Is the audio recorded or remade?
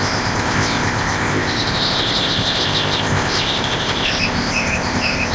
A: remade